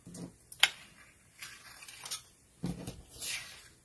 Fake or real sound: real